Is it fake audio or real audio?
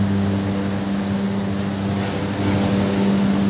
real